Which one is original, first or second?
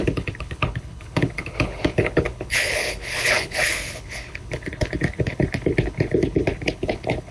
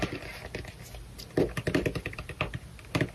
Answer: second